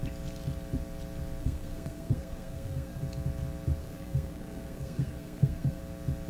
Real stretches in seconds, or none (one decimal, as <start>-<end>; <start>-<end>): 0.0-1.4; 3.0-3.8; 5.8-6.3